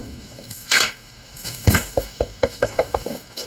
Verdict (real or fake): fake